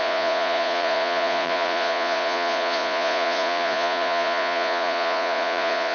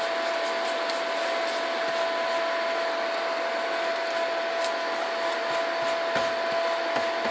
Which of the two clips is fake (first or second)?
first